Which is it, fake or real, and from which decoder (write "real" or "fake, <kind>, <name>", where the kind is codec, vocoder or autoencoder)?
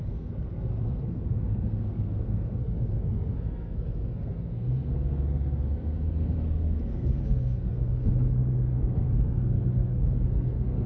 fake, codec, SNAC